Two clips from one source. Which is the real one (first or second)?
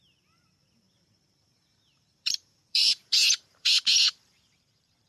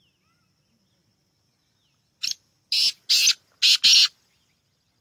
second